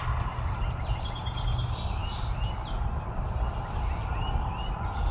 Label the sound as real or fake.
real